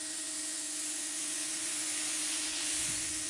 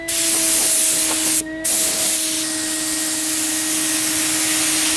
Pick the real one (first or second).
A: second